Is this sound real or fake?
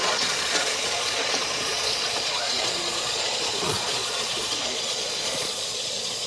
fake